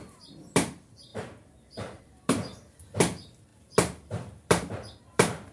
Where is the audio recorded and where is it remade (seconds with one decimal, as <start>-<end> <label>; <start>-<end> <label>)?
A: 0.0-1.1 remade; 1.1-2.0 recorded; 2.0-5.5 remade